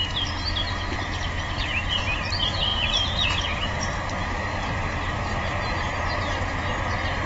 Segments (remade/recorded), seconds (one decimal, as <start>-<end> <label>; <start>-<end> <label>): 0.0-2.7 recorded; 2.7-3.8 remade; 3.8-7.3 recorded